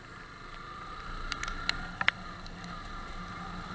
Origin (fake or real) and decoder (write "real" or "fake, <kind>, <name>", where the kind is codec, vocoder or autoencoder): real